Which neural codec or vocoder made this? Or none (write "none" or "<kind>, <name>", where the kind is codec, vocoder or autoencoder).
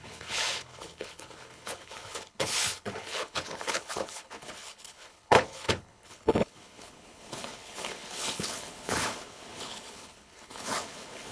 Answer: codec, HILCodec